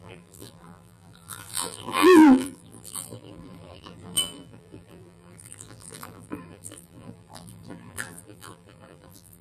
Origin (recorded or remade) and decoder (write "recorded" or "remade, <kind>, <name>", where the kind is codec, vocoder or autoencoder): remade, vocoder, BigVGAN v2